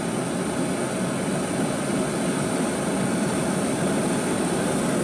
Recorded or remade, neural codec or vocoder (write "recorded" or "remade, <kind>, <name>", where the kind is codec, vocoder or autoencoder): recorded